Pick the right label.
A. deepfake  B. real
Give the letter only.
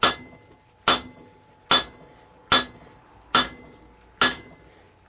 B